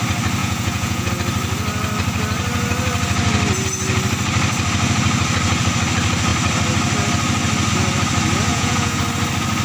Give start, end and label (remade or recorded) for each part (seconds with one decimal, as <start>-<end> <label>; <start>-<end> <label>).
0.0-0.4 recorded; 0.4-1.1 remade; 1.1-8.5 recorded; 8.5-9.0 remade; 9.0-9.6 recorded